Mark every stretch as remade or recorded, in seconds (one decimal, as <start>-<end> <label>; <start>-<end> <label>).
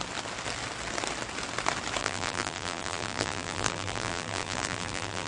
0.0-2.0 recorded; 2.0-5.3 remade